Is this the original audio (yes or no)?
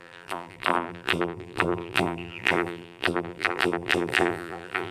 no